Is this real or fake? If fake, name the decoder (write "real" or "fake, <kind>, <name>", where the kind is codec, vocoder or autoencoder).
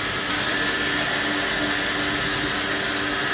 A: real